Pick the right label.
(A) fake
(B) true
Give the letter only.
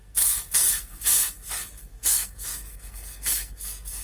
A